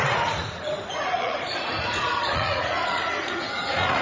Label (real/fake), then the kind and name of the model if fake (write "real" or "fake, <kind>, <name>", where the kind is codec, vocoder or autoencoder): fake, vocoder, Vocos